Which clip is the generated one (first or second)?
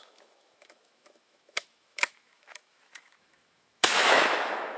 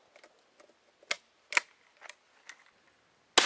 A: first